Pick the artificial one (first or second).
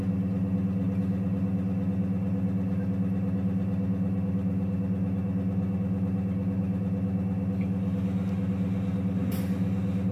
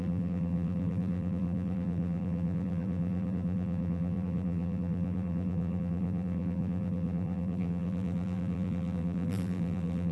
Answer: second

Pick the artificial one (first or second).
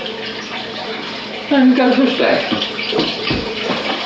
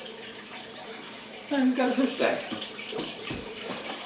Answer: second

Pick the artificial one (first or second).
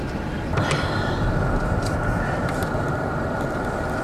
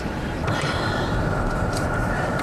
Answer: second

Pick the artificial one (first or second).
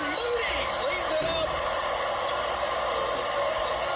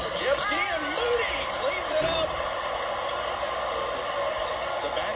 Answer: second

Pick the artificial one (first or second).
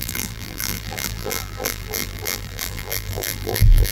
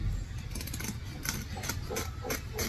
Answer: first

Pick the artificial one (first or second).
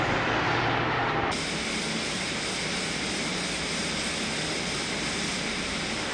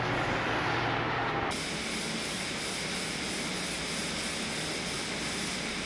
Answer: first